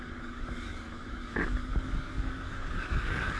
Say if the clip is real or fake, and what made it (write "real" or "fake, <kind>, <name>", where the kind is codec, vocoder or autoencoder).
fake, codec, DAC